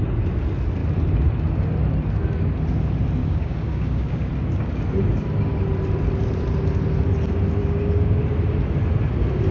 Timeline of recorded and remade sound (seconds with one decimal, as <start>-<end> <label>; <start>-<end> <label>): 0.0-3.2 recorded; 3.2-4.3 remade; 4.3-7.6 recorded; 7.6-8.2 remade; 8.2-9.5 recorded